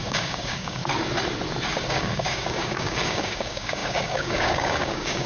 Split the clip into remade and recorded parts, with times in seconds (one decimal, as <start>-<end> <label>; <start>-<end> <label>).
0.0-0.8 remade; 0.8-1.9 recorded; 1.9-5.3 remade